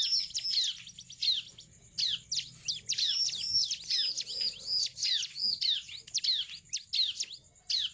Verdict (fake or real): real